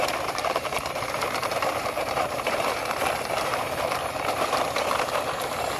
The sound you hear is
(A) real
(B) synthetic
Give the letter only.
B